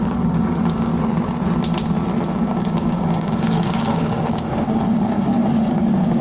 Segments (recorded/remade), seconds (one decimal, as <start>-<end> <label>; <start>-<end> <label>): 0.0-0.9 remade; 0.9-2.3 recorded; 2.3-6.2 remade